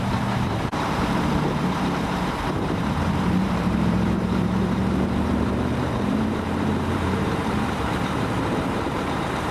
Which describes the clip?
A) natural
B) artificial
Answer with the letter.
B